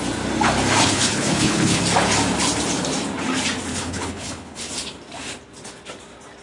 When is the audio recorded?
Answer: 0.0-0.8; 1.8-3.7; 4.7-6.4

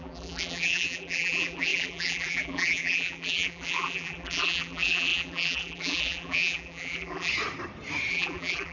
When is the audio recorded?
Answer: 7.3-8.1